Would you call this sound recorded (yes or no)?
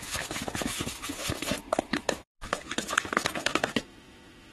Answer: no